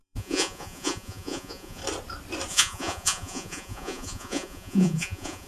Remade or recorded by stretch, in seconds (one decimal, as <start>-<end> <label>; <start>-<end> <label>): 0.0-1.8 remade; 1.8-2.5 recorded; 2.5-5.5 remade